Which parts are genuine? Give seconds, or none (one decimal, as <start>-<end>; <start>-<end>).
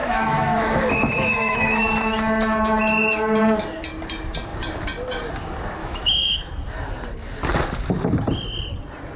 2.8-5.8; 6.5-9.2